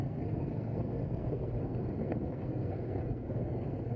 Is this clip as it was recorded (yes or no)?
no